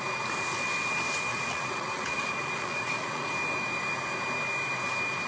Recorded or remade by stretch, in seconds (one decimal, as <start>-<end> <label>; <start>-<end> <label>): 0.0-1.3 recorded; 1.3-3.3 remade; 3.3-5.3 recorded